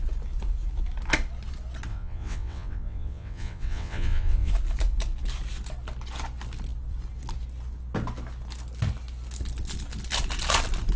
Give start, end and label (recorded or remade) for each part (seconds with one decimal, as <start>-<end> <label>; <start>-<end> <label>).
0.0-1.9 recorded; 1.9-4.5 remade; 4.5-11.0 recorded